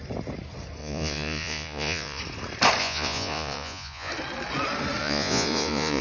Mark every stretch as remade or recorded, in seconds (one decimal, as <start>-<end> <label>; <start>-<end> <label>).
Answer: 0.0-0.8 recorded; 0.8-2.2 remade; 2.2-2.8 recorded; 2.8-4.1 remade; 4.1-5.0 recorded; 5.0-6.0 remade